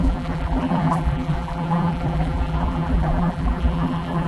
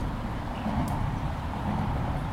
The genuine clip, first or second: second